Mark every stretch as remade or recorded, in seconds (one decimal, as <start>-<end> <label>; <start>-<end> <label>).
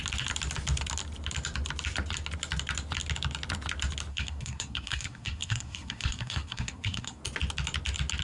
0.0-4.1 recorded; 4.1-7.2 remade; 7.2-8.2 recorded